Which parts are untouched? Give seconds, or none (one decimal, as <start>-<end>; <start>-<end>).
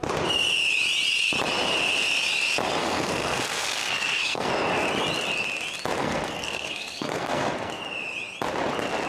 0.0-2.8; 4.5-6.0; 7.8-9.1